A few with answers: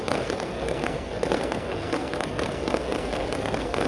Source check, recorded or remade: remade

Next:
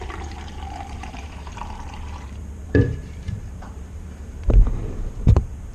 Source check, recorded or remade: remade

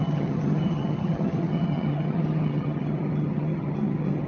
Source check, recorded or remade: remade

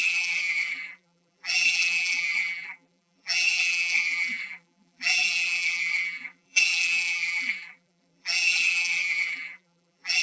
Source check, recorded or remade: remade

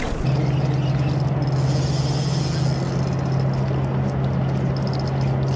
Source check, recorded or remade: recorded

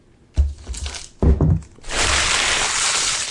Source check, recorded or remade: recorded